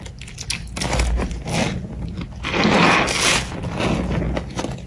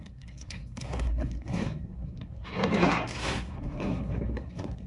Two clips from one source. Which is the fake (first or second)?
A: second